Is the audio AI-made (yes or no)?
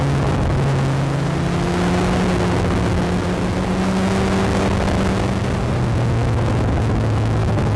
no